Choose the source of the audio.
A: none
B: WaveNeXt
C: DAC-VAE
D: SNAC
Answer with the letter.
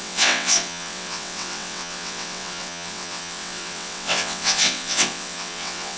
B